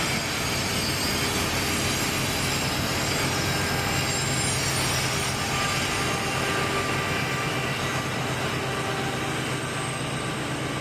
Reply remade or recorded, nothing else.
recorded